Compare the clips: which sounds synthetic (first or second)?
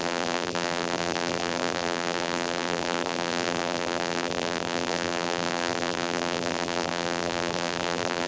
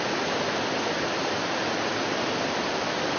first